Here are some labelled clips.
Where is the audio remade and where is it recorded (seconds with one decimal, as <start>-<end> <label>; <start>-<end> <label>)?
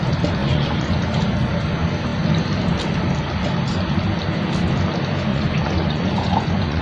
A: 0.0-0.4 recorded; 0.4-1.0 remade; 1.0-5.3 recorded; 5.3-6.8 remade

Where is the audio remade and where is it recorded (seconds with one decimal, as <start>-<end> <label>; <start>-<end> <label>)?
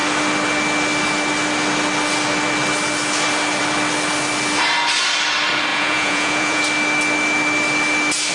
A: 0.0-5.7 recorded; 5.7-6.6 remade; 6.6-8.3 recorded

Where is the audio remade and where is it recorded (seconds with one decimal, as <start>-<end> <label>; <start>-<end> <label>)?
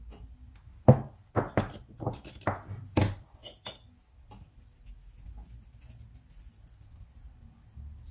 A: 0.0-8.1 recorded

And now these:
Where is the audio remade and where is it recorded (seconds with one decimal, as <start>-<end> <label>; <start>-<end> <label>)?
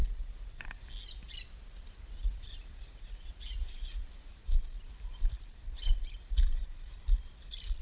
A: 0.0-3.3 recorded; 3.3-4.3 remade; 4.3-7.8 recorded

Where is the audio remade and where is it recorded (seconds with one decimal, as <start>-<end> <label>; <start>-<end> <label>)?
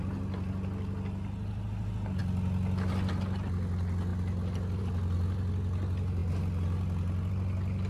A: 0.0-7.9 recorded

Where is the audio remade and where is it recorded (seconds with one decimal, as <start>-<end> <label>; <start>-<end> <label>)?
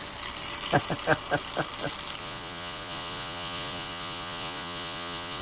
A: 0.0-2.2 recorded; 2.2-5.4 remade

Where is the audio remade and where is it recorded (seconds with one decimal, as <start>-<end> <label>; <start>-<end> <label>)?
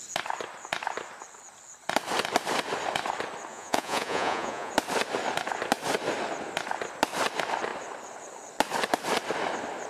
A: 0.0-3.5 recorded; 3.5-4.7 remade; 4.7-9.9 recorded